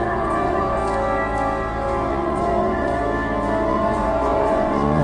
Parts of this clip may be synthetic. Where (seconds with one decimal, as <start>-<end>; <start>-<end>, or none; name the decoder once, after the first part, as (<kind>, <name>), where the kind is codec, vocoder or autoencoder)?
0.0-0.8 (vocoder, Vocos); 2.1-3.0; 3.7-5.0